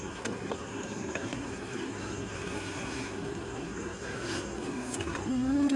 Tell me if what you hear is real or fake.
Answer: fake